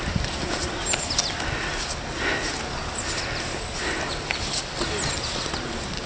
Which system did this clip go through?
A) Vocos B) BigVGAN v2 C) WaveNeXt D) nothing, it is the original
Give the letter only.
D